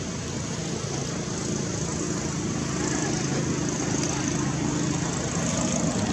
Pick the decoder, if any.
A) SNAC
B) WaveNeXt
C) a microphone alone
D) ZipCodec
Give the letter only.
C